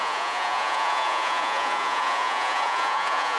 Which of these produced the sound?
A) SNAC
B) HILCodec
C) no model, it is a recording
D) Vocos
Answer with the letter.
D